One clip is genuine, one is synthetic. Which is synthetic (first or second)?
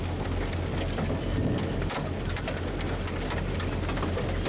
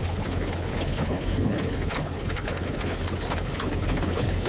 second